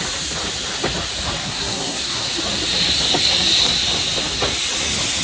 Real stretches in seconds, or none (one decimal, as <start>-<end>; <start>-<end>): 0.0-1.4; 2.4-5.2